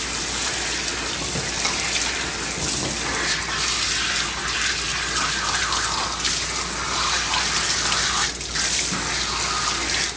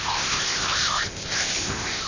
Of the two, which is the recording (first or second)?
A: first